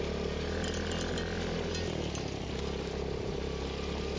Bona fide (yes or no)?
yes